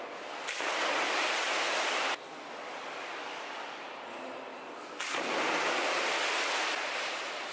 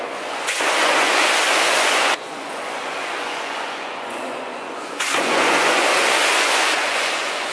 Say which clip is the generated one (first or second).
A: second